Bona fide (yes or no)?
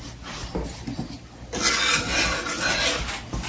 yes